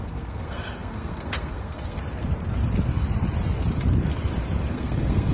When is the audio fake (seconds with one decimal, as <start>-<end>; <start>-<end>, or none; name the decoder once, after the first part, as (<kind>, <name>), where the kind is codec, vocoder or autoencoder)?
0.0-2.0 (codec, SNAC); 4.7-5.3